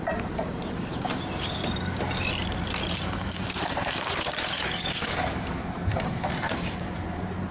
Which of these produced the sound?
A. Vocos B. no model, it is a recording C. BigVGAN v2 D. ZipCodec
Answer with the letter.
C